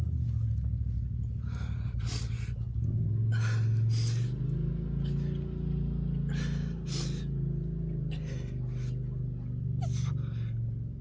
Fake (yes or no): no